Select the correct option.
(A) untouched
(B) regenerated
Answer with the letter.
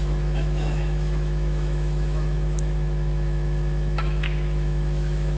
B